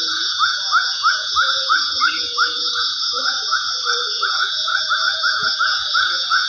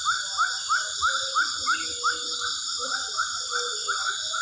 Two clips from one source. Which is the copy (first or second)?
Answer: first